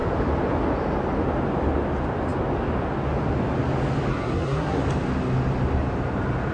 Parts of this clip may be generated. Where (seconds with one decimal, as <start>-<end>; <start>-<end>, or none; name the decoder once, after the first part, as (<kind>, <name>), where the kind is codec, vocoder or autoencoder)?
4.1-4.8 (codec, SNAC)